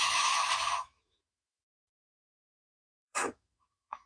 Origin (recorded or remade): remade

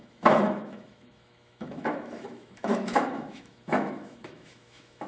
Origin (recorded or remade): remade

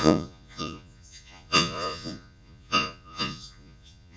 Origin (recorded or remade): remade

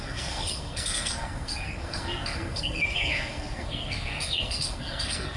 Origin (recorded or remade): remade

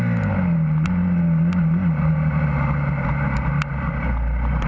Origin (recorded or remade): recorded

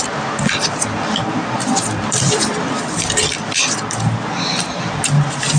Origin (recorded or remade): recorded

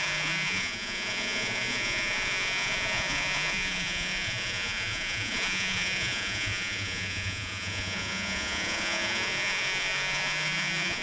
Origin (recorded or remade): remade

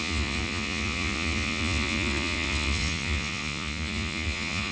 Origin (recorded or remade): remade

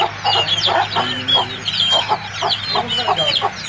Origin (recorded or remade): recorded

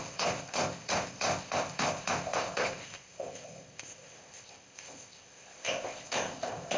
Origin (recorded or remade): remade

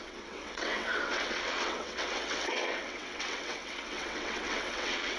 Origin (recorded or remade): remade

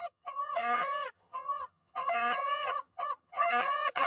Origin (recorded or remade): remade